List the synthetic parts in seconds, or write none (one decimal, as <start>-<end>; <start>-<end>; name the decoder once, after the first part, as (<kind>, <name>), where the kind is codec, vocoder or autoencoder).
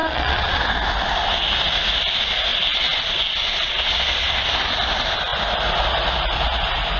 0.0-0.6 (vocoder, Vocos)